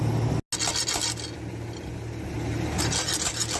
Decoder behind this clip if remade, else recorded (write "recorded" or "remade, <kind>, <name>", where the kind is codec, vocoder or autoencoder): recorded